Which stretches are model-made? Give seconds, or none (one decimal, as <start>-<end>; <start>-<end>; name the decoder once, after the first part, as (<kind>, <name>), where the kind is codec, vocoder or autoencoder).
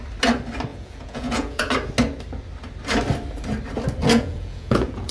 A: 0.7-1.7 (vocoder, Vocos); 4.0-5.1